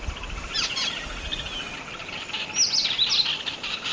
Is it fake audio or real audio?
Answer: real